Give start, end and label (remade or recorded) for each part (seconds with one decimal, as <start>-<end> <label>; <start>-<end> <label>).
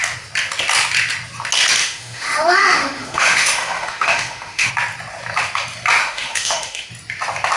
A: 0.0-1.8 recorded; 1.8-4.7 remade; 4.7-6.0 recorded; 6.0-6.9 remade; 6.9-7.6 recorded